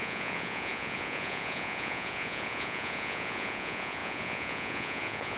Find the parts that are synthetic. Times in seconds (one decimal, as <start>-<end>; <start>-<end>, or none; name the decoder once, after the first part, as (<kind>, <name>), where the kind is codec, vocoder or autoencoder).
0.0-5.4 (vocoder, Vocos)